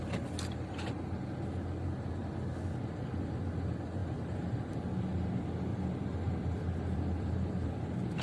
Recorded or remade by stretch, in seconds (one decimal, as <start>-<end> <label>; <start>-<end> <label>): 0.0-4.0 recorded; 4.0-4.9 remade; 4.9-5.7 recorded; 5.7-8.2 remade

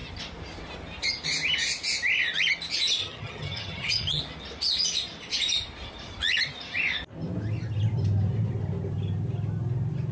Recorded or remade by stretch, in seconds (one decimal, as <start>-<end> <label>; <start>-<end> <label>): 0.0-3.0 recorded; 3.0-4.2 remade; 4.2-10.1 recorded

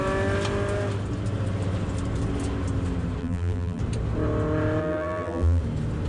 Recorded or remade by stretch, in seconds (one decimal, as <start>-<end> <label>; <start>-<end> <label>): 0.0-3.2 recorded; 3.2-3.8 remade; 3.8-4.8 recorded; 4.8-5.6 remade; 5.6-6.1 recorded

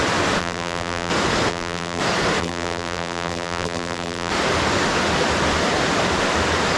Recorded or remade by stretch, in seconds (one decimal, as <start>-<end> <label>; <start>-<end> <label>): 0.0-0.4 recorded; 0.4-1.1 remade; 1.1-1.5 recorded; 1.5-2.0 remade; 2.0-2.4 recorded; 2.4-4.3 remade; 4.3-6.8 recorded

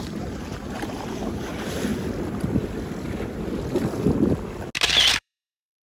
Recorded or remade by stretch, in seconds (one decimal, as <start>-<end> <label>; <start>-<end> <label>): 0.0-1.9 remade; 1.9-5.1 recorded; 5.1-5.9 remade

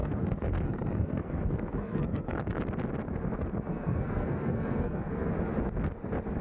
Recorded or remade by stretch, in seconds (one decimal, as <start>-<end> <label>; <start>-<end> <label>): 0.0-2.6 remade; 2.6-3.7 recorded; 3.7-5.3 remade; 5.3-6.4 recorded

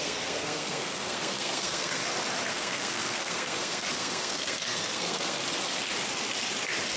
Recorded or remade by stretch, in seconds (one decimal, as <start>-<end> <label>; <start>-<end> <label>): 0.0-2.0 remade; 2.0-2.5 recorded; 2.5-5.4 remade; 5.4-7.0 recorded

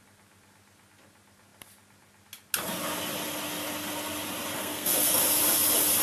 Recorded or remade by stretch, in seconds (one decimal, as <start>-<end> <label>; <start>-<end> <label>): 0.0-4.6 recorded; 4.6-5.2 remade; 5.2-6.0 recorded